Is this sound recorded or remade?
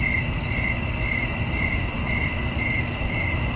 recorded